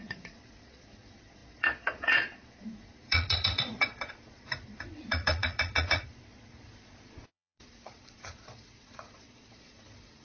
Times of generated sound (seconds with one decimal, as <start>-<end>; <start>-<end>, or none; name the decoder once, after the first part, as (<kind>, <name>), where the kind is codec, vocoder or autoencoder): 0.0-10.2 (vocoder, Vocos)